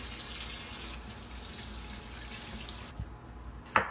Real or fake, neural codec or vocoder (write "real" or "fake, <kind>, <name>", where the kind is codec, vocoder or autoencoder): real